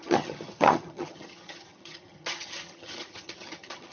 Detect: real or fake fake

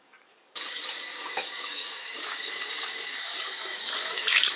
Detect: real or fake fake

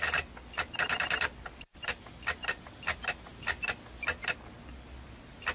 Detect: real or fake real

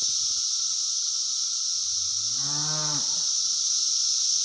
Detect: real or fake real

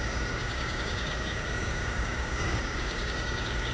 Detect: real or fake fake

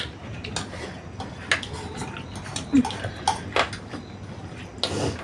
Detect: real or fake real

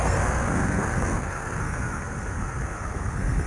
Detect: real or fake fake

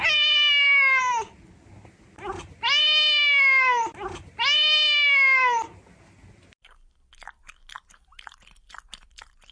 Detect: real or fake real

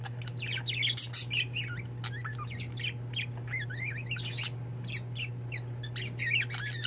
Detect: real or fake real